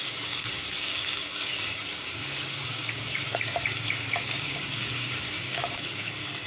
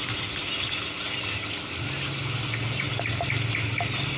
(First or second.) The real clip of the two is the second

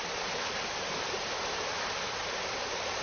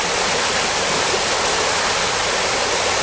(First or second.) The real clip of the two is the second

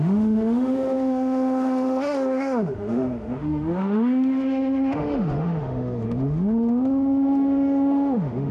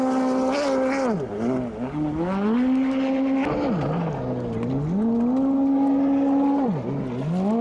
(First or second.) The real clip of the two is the second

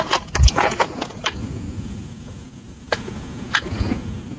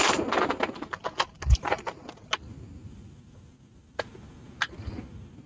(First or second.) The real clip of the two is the second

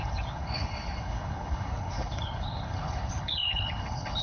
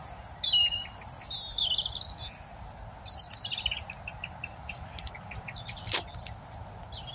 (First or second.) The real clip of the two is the second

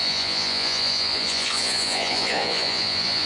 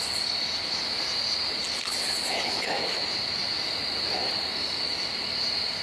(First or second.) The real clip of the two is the second